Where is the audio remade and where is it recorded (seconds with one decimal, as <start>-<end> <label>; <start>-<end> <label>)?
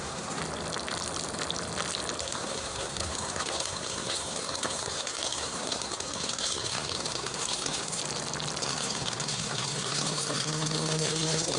0.0-0.4 remade; 0.4-2.2 recorded; 2.2-8.0 remade; 8.0-8.6 recorded; 8.6-11.6 remade